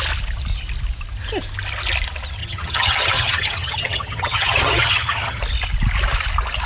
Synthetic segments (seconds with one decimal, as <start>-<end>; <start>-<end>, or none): 2.4-5.4